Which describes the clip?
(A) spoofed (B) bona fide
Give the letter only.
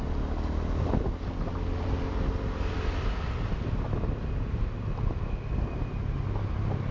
B